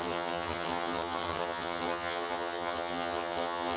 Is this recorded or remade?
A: remade